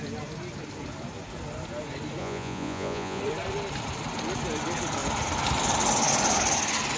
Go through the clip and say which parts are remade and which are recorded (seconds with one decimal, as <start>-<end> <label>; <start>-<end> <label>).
0.0-2.2 recorded; 2.2-3.2 remade; 3.2-7.0 recorded